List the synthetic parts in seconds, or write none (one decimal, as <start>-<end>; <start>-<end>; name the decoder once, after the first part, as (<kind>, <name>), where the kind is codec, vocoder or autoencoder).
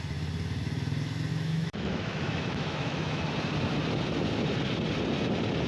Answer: 1.3-3.2 (autoencoder, DAC-VAE)